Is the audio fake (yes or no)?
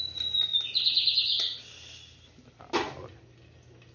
no